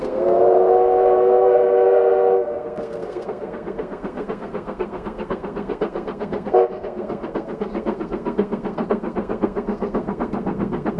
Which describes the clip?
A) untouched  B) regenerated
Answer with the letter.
B